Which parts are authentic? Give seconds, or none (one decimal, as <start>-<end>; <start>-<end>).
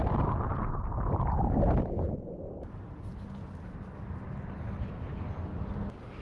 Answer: 0.0-6.2